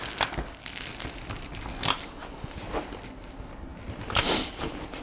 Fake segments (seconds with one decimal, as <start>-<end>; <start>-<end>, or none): none